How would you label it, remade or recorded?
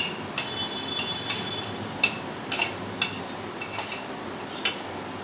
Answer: recorded